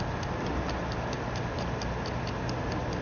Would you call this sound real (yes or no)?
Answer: yes